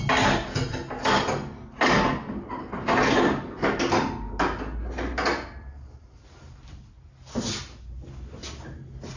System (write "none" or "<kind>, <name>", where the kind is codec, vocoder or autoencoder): none